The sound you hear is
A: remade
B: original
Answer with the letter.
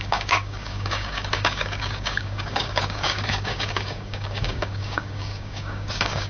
A